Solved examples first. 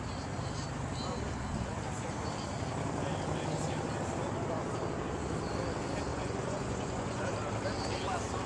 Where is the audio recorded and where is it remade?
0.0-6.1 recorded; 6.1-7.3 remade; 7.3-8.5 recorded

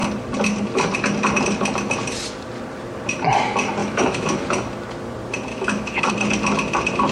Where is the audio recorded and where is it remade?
0.0-3.8 recorded; 3.8-4.4 remade; 4.4-5.5 recorded; 5.5-6.1 remade; 6.1-7.1 recorded